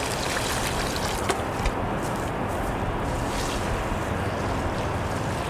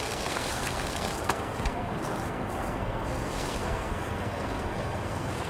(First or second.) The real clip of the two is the first